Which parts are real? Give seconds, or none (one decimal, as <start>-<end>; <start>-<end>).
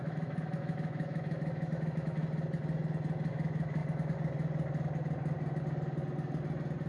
2.2-3.3; 3.8-6.9